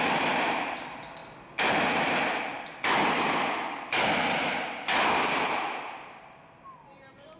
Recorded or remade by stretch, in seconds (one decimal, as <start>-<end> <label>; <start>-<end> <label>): 0.0-7.4 recorded